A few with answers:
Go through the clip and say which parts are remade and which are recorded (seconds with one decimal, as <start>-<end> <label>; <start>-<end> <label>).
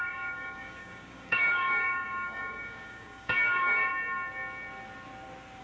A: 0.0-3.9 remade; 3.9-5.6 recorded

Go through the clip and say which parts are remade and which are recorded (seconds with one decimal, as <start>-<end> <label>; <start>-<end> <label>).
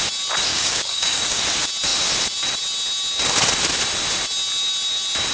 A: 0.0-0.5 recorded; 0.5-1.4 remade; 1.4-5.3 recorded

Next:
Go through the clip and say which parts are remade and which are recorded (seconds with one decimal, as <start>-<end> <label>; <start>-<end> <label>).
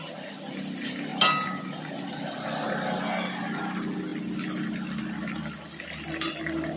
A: 0.0-6.8 recorded